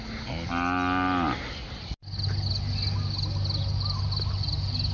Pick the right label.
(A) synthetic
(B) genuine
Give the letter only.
B